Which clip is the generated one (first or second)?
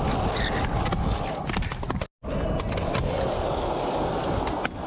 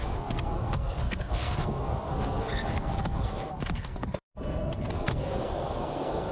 second